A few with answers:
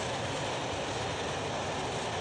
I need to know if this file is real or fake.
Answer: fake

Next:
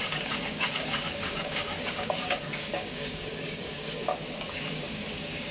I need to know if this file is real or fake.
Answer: fake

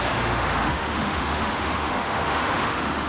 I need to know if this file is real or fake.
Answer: fake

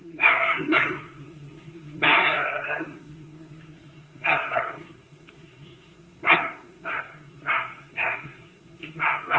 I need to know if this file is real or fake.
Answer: fake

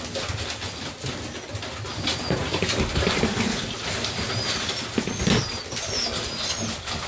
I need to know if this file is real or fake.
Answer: real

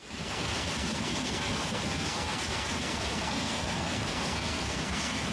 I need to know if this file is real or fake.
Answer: fake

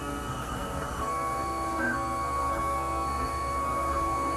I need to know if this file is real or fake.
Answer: fake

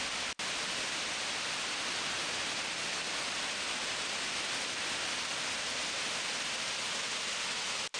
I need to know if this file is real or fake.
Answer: real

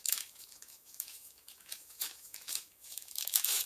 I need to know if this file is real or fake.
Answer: fake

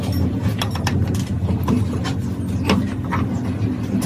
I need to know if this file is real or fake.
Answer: real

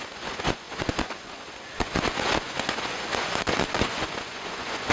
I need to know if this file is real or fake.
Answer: fake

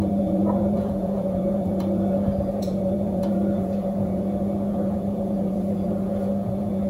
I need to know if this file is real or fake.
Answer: fake